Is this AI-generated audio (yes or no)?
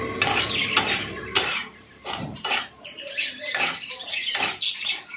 yes